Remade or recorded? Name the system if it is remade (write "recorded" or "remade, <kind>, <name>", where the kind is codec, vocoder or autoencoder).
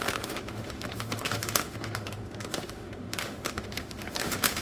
remade, autoencoder, DAC-VAE